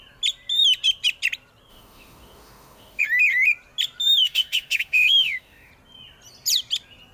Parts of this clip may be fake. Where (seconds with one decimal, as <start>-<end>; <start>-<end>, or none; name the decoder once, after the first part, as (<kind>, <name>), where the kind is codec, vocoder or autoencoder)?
1.7-3.0 (autoencoder, DAC-VAE); 4.2-5.7